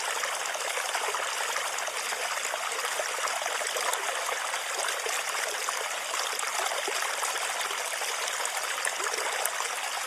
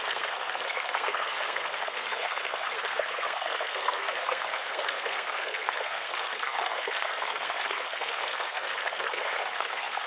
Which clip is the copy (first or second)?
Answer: second